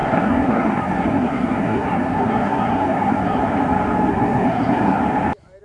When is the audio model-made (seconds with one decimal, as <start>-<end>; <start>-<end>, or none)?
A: 0.0-3.4; 4.1-5.0